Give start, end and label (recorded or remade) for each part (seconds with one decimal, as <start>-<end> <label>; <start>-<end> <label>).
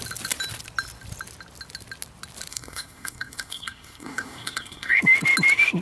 0.0-2.5 recorded; 2.5-5.0 remade; 5.0-5.8 recorded